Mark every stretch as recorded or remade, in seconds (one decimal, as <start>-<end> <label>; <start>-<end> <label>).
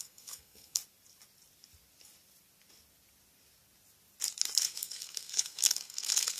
0.0-0.8 remade; 0.8-4.6 recorded; 4.6-6.4 remade